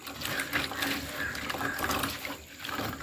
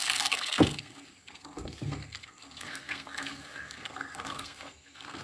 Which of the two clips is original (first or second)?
first